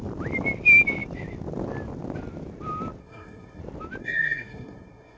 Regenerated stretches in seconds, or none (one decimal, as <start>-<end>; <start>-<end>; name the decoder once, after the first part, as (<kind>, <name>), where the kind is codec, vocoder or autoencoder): 3.0-3.6 (codec, SNAC); 4.0-5.2